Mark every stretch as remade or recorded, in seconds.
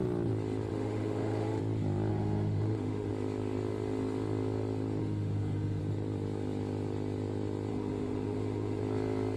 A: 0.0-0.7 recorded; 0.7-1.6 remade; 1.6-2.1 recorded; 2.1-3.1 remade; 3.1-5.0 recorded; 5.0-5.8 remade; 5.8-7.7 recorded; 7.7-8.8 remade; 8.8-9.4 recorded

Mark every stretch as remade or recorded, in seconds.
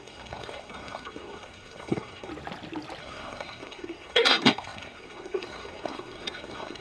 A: 0.0-2.3 remade; 2.3-3.0 recorded; 3.0-6.8 remade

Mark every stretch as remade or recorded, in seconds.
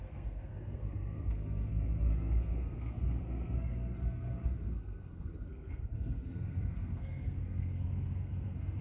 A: 0.0-8.8 remade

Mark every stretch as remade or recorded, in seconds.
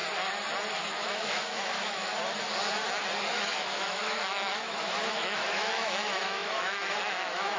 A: 0.0-0.9 recorded; 0.9-2.1 remade; 2.1-3.3 recorded; 3.3-7.6 remade